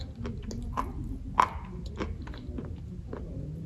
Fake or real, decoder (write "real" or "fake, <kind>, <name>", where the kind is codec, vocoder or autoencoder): real